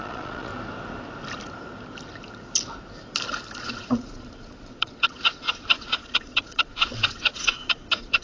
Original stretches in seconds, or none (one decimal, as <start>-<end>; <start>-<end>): 0.5-3.6